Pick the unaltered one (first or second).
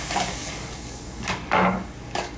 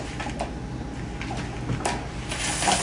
second